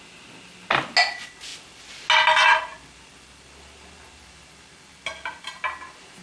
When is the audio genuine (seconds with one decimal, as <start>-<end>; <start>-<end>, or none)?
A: 0.0-6.2